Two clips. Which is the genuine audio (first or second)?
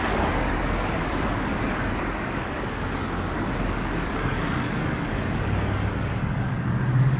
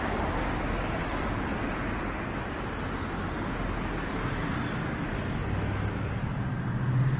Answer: second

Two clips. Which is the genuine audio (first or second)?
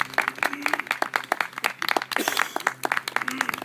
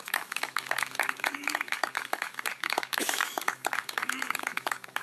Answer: first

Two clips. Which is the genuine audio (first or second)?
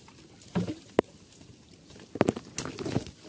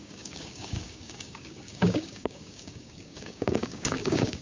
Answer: first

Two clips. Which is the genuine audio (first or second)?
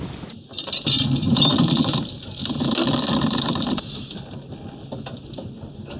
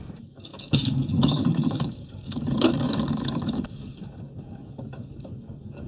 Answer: first